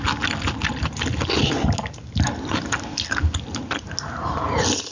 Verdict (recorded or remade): recorded